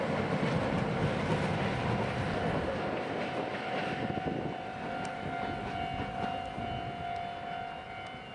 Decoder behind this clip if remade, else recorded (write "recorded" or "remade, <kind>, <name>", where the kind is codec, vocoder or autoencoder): recorded